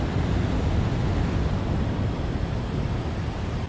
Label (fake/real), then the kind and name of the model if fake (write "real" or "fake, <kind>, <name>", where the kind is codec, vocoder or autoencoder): real